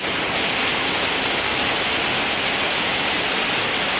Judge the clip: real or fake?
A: real